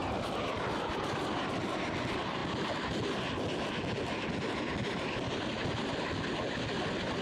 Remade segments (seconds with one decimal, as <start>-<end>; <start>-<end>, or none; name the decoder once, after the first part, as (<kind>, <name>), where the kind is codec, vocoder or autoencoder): 0.0-1.9 (vocoder, BigVGAN v2)